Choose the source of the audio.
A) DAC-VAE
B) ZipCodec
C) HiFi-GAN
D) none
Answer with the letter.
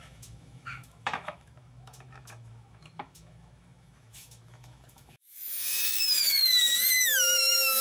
A